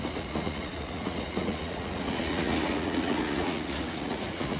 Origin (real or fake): fake